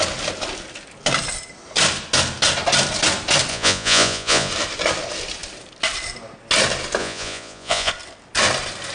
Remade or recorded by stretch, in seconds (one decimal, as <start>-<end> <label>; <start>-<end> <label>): 0.0-3.5 recorded; 3.5-4.5 remade; 4.5-7.0 recorded; 7.0-7.9 remade; 7.9-8.9 recorded

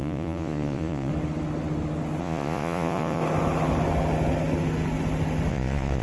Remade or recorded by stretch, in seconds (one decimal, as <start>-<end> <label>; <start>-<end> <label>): 0.0-1.1 remade; 1.1-2.2 recorded; 2.2-3.2 remade; 3.2-5.5 recorded; 5.5-6.0 remade

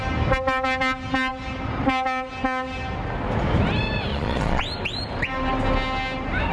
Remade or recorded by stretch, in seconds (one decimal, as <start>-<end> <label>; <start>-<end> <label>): 0.0-4.1 recorded; 4.1-4.6 remade; 4.6-6.5 recorded

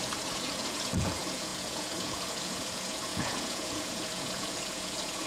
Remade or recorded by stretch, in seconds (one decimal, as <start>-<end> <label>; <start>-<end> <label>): 0.0-5.3 remade

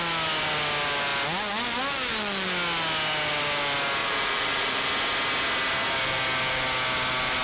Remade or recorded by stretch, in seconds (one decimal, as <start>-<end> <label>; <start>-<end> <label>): 0.0-4.0 recorded; 4.0-4.9 remade; 4.9-7.4 recorded